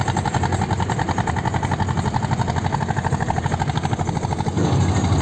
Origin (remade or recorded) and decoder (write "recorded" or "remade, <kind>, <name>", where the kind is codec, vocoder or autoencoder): recorded